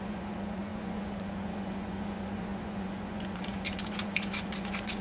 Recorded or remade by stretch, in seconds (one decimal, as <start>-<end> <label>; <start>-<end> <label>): 0.0-5.0 remade